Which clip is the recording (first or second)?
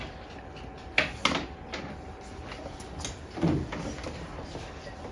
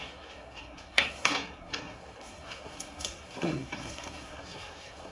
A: first